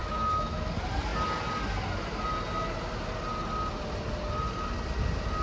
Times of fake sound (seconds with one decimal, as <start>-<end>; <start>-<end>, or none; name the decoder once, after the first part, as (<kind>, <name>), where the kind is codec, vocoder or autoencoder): 0.0-0.7 (autoencoder, DAC-VAE)